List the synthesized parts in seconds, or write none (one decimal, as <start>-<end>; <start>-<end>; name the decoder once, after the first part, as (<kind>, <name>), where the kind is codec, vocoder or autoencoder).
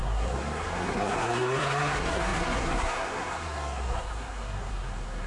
0.0-5.3 (codec, SNAC)